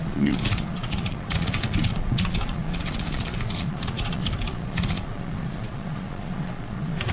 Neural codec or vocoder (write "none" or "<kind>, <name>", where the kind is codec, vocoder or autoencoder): vocoder, Vocos